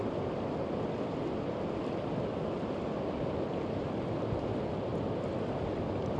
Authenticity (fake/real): real